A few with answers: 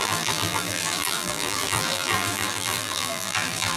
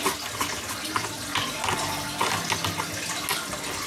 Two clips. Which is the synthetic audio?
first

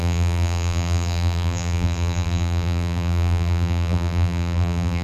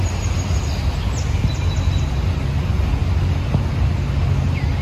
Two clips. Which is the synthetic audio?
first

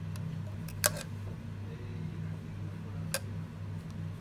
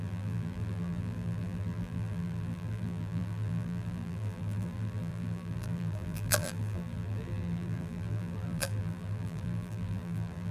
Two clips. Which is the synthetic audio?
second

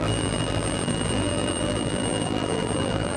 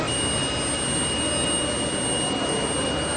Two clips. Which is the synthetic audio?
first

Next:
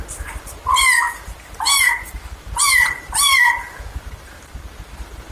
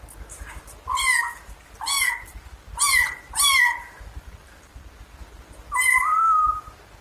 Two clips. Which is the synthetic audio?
first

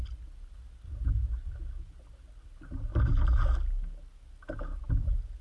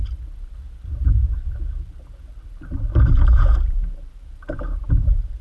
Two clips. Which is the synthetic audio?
second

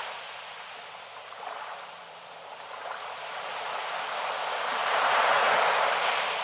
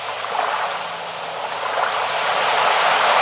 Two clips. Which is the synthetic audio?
first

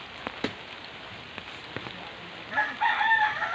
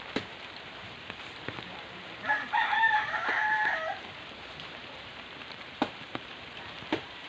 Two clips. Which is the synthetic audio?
second